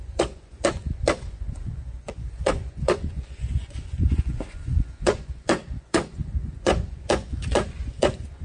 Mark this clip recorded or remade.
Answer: remade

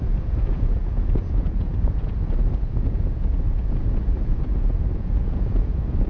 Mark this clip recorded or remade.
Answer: remade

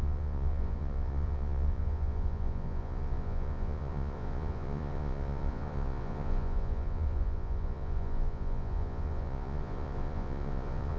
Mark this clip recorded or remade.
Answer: remade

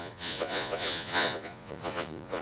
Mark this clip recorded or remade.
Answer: remade